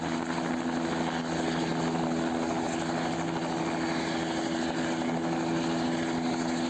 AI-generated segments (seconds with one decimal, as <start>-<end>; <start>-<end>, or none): none